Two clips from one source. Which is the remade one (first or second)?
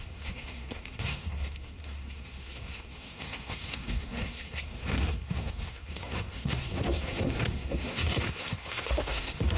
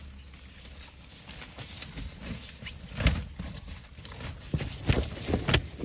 first